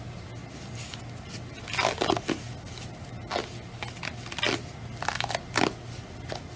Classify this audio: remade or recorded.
recorded